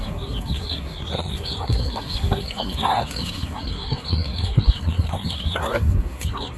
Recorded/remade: remade